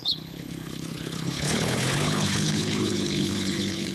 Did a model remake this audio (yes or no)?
yes